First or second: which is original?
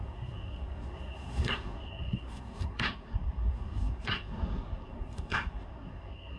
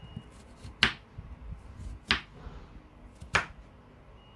second